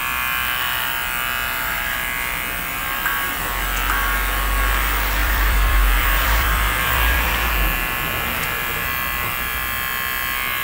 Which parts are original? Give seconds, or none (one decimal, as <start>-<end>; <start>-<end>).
0.0-2.8; 3.6-5.2; 7.3-10.6